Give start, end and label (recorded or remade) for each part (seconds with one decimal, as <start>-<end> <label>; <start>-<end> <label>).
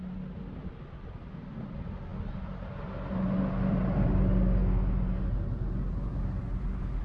0.0-7.0 recorded